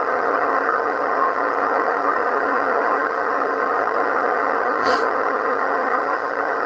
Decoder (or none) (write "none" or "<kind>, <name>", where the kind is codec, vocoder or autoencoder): vocoder, HiFi-GAN